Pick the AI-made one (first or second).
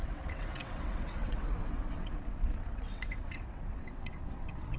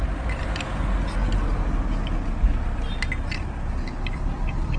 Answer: first